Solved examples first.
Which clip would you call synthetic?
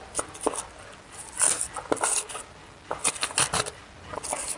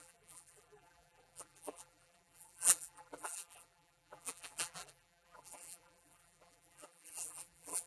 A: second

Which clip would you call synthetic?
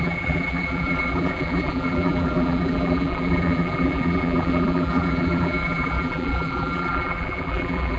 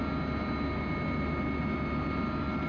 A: first